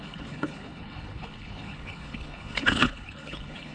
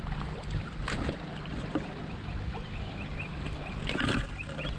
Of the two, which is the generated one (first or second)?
first